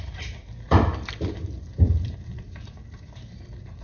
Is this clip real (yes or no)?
no